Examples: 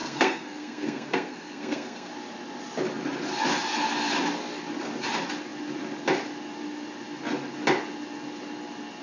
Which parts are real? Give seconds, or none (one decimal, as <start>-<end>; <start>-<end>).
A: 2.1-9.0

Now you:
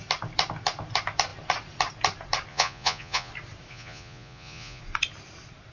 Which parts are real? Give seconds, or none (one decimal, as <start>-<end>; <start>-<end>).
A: 0.0-2.5; 3.3-3.7; 4.8-5.7

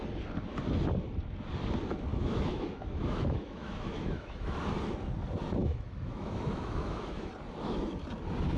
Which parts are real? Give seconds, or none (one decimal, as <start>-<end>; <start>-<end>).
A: 0.0-2.1; 4.6-5.6; 7.3-8.6